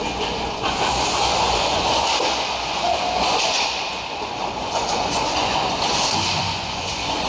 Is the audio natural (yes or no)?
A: no